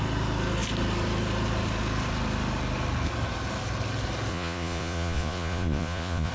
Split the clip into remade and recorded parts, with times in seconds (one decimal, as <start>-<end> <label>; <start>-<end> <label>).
0.0-4.3 recorded; 4.3-6.3 remade